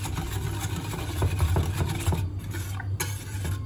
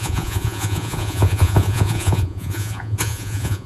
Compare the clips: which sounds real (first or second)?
first